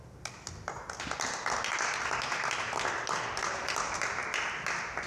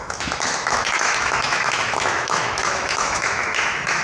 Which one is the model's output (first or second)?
second